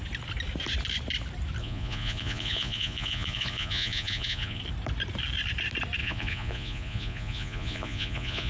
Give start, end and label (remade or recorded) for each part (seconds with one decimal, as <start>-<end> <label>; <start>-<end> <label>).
0.0-1.6 recorded; 1.6-4.6 remade; 4.6-6.0 recorded; 6.0-8.5 remade

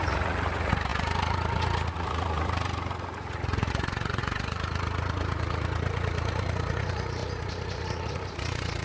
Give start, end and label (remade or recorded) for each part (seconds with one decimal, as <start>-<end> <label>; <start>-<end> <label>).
0.0-8.8 remade

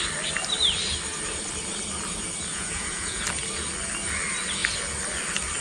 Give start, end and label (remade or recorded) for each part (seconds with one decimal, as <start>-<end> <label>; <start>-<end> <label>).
0.0-2.5 recorded; 2.5-3.2 remade; 3.2-5.6 recorded

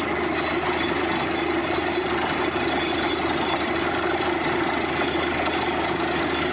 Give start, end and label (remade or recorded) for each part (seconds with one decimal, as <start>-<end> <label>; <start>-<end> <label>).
0.0-1.6 recorded; 1.6-4.7 remade; 4.7-6.5 recorded

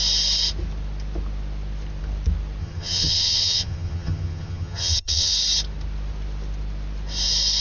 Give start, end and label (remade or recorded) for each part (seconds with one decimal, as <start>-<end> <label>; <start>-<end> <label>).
0.0-2.6 recorded; 2.6-5.3 remade; 5.3-7.6 recorded